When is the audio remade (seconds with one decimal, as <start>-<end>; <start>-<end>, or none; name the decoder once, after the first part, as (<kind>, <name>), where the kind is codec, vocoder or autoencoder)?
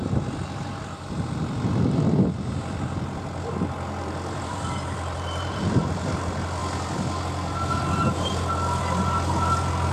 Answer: 4.0-6.1 (vocoder, BigVGAN v2)